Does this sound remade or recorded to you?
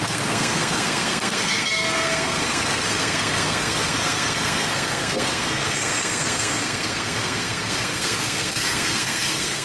remade